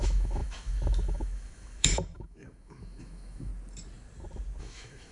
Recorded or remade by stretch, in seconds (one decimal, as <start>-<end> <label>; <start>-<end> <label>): 0.0-3.5 remade; 3.5-4.6 recorded; 4.6-5.1 remade